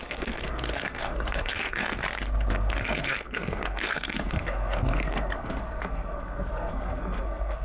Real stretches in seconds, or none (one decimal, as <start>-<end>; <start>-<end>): 2.0-2.5